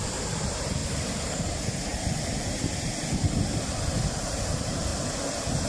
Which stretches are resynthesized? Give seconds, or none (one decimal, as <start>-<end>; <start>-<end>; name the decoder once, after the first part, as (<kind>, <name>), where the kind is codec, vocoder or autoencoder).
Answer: 0.0-0.8 (vocoder, BigVGAN v2); 1.4-1.9; 4.2-4.9